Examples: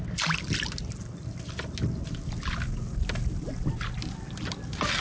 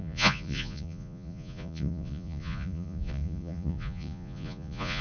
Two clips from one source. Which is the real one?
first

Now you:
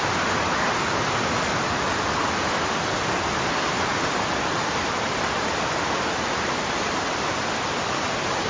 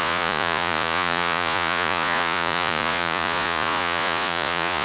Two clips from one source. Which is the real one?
first